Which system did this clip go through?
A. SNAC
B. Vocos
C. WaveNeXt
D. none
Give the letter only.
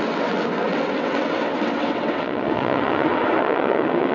C